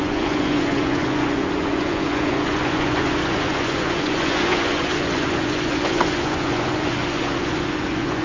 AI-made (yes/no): yes